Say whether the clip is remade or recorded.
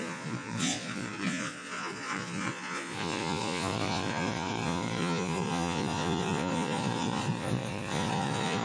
remade